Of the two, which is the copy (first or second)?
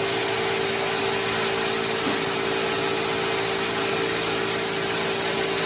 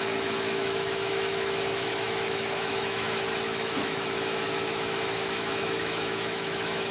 second